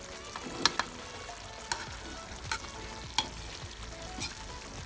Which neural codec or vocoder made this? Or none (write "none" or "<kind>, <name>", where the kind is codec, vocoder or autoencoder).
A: none